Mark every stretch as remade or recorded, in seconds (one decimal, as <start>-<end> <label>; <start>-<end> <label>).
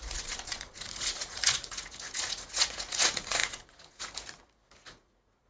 0.0-5.5 remade